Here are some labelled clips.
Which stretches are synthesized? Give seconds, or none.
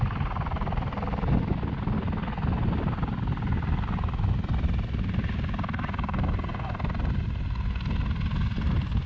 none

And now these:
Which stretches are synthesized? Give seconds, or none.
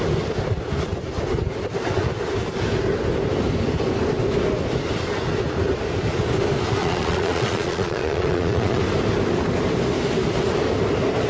6.8-8.8 (vocoder, Vocos)